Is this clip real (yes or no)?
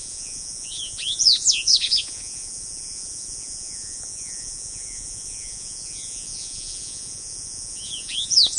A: no